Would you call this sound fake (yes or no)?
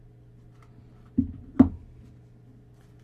no